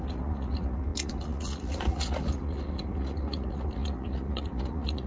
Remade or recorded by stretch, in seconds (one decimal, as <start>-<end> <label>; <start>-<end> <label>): 0.0-5.1 remade